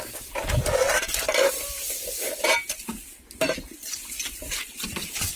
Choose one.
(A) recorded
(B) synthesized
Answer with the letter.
B